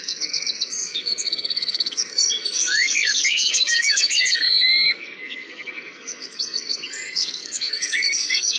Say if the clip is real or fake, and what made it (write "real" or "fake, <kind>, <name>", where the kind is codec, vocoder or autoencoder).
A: fake, codec, SNAC